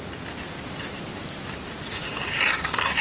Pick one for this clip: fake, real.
real